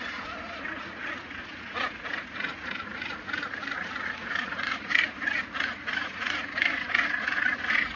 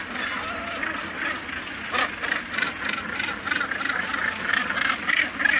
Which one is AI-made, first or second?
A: first